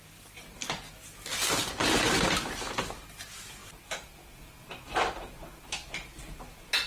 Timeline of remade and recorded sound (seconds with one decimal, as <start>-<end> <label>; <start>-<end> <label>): 0.0-6.9 recorded